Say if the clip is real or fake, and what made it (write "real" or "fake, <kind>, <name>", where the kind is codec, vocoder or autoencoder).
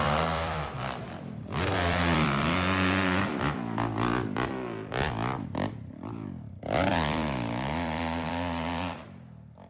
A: fake, vocoder, BigVGAN v2